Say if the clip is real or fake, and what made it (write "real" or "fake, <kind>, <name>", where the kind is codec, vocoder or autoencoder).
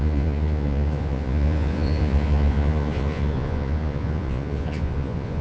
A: fake, vocoder, Vocos